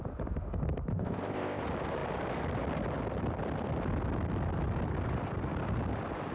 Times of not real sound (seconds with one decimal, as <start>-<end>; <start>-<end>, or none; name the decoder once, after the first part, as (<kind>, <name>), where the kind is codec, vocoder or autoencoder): 0.9-1.6 (codec, ZipCodec)